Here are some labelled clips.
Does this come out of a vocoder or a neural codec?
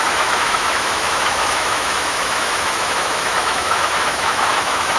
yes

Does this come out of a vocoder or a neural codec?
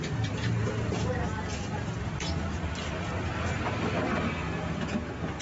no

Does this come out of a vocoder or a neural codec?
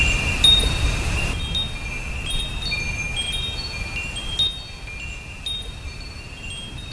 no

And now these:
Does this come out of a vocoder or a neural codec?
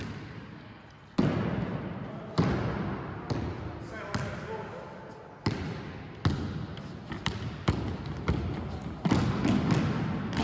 no